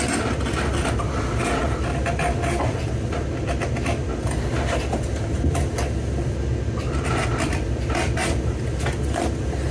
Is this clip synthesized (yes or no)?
no